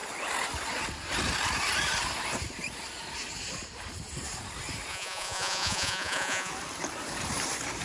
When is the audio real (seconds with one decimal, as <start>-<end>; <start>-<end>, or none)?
0.0-4.9; 6.5-7.8